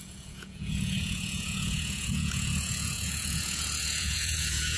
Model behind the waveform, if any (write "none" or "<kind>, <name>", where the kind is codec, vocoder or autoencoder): vocoder, Vocos